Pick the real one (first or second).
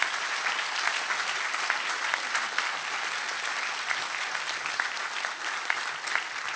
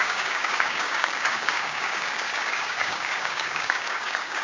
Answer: first